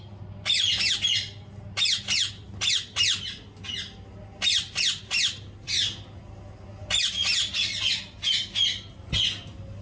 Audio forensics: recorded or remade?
recorded